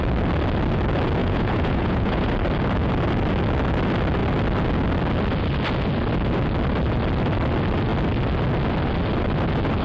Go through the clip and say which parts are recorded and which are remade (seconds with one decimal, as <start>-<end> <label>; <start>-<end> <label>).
0.0-1.2 recorded; 1.2-2.3 remade; 2.3-9.8 recorded